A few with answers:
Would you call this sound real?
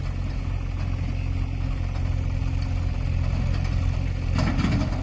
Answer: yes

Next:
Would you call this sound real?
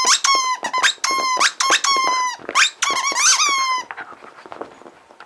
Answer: yes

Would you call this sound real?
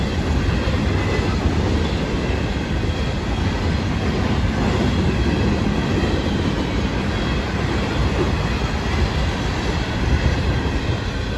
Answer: yes